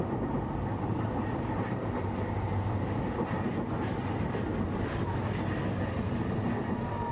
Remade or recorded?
recorded